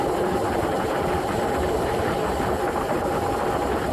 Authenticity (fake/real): real